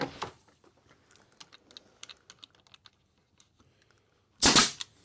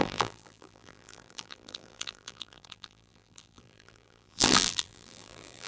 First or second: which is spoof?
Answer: second